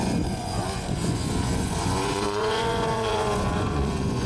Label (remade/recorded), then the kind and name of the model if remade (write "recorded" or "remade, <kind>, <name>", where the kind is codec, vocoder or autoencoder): remade, vocoder, Vocos